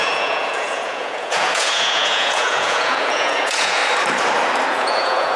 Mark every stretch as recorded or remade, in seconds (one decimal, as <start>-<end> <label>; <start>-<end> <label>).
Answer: 0.0-3.8 remade; 3.8-4.7 recorded; 4.7-5.4 remade